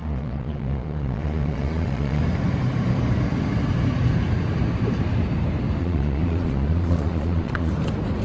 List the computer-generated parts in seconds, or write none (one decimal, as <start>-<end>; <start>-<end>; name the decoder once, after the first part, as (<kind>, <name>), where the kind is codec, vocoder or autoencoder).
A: 0.0-2.2 (vocoder, Vocos); 5.8-7.7